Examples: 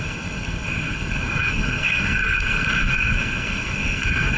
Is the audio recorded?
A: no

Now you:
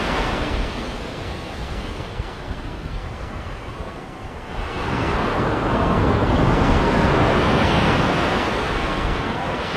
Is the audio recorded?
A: no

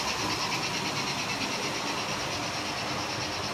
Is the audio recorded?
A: yes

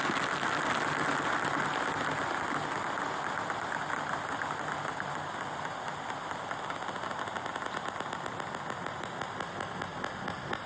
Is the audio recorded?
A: yes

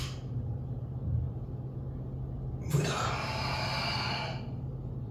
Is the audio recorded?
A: yes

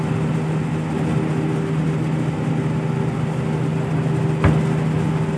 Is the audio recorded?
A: yes